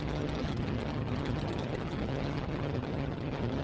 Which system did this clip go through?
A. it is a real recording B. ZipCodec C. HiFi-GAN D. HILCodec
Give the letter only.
C